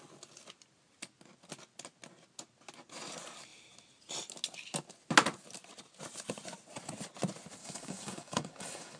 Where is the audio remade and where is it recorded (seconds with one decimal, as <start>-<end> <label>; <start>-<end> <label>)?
0.0-7.6 recorded; 7.6-9.0 remade